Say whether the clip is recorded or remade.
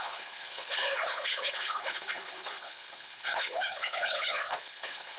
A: remade